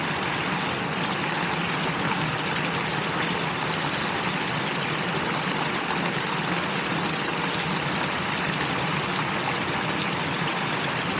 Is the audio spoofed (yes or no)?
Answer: no